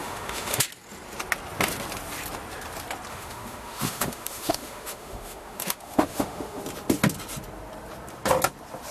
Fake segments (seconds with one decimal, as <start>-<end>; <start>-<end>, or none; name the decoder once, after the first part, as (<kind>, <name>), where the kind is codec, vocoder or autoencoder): 0.0-0.7 (autoencoder, DAC-VAE); 3.1-6.6